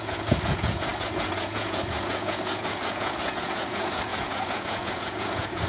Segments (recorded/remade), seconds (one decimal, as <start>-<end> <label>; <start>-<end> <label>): 0.0-5.7 remade